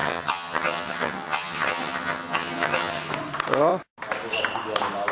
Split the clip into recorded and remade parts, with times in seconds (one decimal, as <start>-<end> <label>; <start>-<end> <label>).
0.0-3.1 remade; 3.1-5.1 recorded